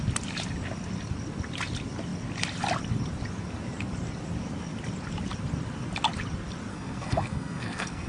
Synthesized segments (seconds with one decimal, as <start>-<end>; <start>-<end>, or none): 6.7-8.1